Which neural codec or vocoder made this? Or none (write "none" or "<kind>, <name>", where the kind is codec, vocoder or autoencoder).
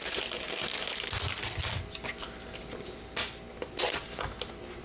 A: none